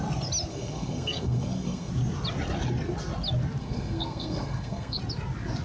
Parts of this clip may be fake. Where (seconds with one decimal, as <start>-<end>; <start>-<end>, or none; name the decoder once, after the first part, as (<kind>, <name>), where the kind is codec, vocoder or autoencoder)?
0.5-1.9 (codec, SNAC); 3.6-5.0